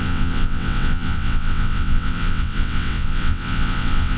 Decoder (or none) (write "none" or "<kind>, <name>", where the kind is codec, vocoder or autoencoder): vocoder, WaveNeXt